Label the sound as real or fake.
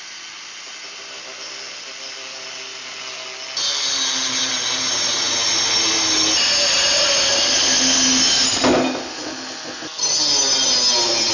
real